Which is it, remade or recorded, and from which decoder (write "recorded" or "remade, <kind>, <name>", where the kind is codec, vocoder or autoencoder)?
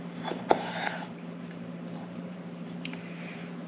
remade, vocoder, BigVGAN v2